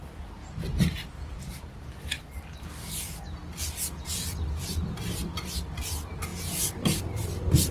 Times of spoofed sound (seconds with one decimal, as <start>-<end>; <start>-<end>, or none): none